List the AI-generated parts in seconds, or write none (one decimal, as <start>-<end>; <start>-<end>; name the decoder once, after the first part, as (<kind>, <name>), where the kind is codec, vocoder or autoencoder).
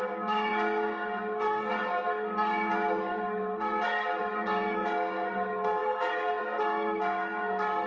0.0-7.9 (codec, SNAC)